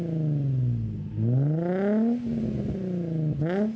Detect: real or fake real